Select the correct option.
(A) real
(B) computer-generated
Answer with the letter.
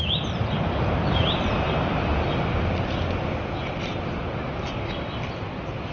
A